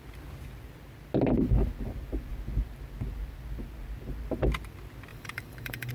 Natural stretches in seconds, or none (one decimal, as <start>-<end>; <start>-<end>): 0.0-5.1